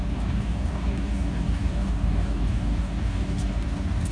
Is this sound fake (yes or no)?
yes